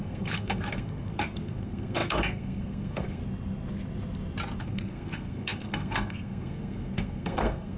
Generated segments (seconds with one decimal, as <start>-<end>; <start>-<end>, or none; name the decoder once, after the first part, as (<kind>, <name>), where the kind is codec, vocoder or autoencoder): 0.0-3.2 (codec, SNAC); 4.6-7.8